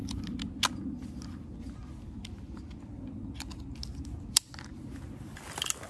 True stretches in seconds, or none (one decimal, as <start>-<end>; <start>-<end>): 0.0-5.9